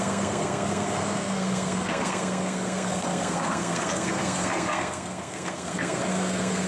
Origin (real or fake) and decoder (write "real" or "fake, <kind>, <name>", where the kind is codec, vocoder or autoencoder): fake, codec, SNAC